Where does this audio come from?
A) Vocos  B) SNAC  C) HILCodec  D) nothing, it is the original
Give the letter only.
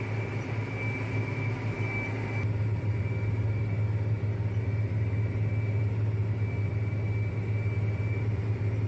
D